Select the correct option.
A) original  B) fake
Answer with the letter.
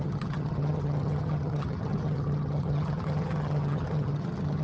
B